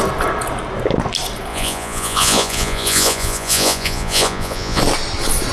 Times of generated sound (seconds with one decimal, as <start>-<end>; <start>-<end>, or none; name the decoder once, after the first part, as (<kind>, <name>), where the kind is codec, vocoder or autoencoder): 1.5-4.8 (vocoder, Vocos)